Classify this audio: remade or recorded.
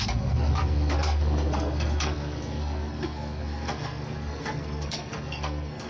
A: remade